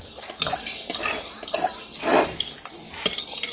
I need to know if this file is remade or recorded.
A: recorded